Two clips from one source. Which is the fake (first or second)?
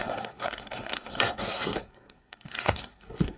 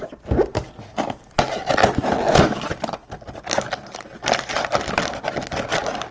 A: first